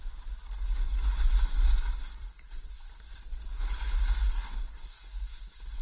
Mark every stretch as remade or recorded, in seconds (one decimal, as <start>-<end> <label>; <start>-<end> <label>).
0.0-5.8 recorded